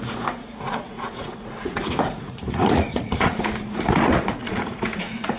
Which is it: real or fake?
fake